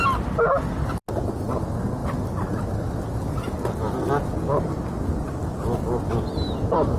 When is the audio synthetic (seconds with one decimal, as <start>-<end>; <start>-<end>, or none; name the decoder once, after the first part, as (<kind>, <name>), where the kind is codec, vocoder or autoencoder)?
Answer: none